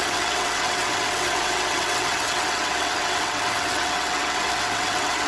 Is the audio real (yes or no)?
no